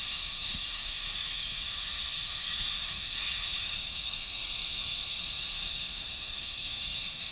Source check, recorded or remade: remade